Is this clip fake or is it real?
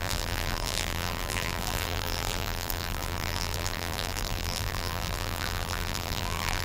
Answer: fake